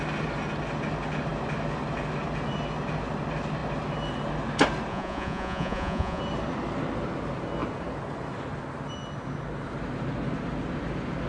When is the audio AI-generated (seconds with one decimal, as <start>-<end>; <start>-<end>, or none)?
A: 4.9-6.2